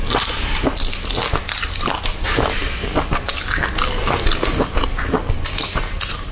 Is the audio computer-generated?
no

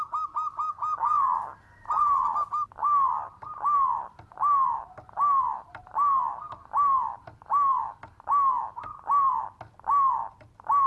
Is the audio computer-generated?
no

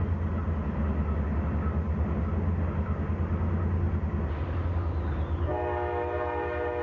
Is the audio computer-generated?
no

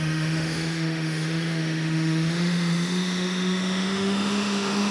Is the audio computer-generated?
yes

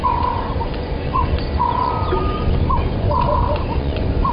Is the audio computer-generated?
yes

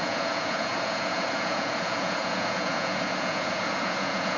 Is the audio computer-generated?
yes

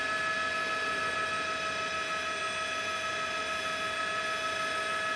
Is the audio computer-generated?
no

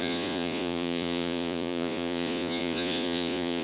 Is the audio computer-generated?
yes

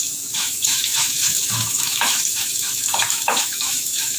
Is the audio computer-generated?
yes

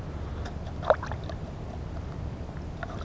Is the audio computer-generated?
no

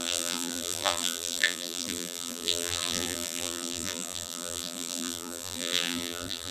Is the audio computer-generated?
yes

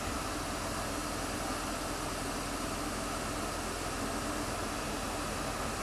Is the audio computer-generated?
no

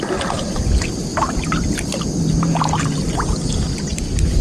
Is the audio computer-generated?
no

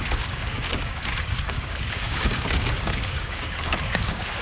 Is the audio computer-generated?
yes